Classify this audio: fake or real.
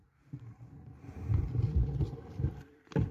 fake